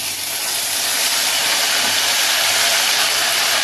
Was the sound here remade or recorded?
recorded